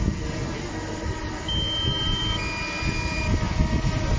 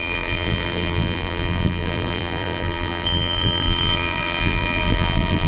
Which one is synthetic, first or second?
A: second